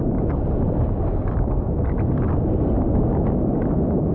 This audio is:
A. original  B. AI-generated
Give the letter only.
A